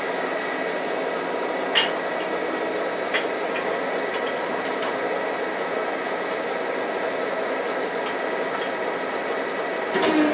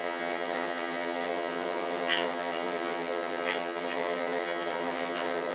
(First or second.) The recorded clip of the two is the first